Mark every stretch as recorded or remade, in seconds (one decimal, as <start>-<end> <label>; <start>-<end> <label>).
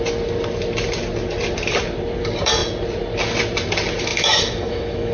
0.0-4.1 recorded; 4.1-5.1 remade